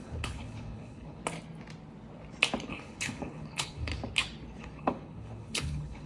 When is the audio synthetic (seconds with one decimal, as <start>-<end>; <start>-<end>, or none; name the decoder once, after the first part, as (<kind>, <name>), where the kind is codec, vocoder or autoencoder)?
0.0-1.2 (codec, HILCodec); 2.7-3.9; 4.6-6.1